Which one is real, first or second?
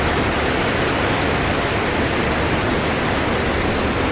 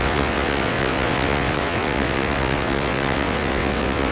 first